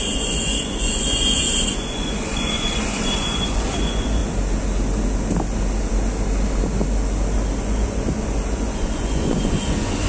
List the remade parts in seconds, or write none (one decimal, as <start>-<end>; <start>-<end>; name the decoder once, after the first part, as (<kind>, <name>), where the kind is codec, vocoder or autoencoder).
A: 0.0-4.2 (vocoder, Vocos); 7.6-10.1